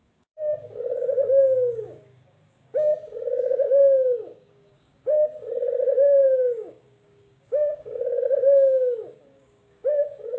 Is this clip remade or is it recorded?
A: remade